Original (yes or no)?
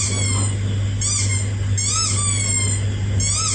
yes